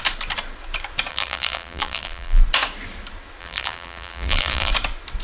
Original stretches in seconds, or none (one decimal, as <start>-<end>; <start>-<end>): 0.0-1.1; 2.4-3.4; 4.7-5.2